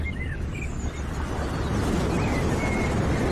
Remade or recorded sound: recorded